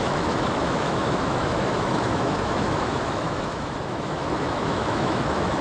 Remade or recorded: remade